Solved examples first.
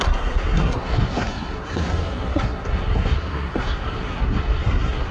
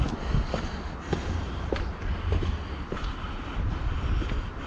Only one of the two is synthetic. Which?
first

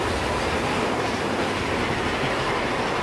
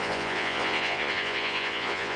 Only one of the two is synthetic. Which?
second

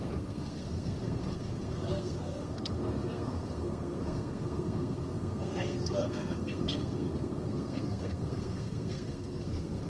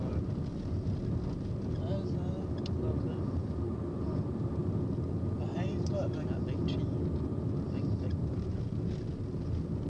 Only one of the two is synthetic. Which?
first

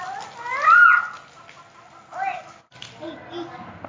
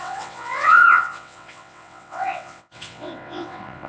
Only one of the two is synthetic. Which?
second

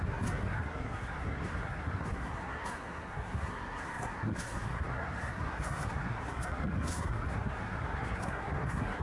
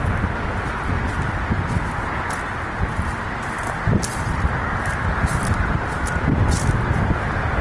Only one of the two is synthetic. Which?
first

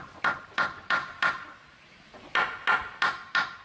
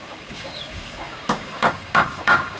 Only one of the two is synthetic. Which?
second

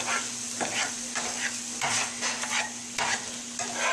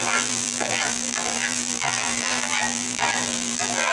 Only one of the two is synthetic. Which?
second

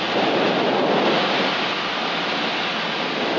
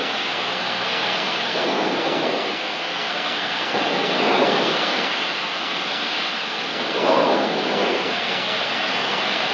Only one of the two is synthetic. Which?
second